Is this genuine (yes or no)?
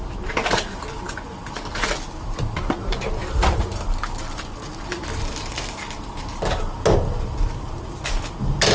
yes